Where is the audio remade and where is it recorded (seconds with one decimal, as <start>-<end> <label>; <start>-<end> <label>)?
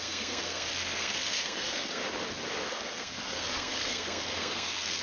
0.0-2.0 remade; 2.0-2.7 recorded; 2.7-5.0 remade